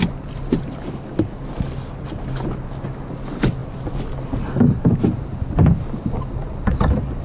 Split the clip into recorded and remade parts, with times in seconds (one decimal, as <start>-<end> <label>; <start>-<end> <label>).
0.0-7.2 recorded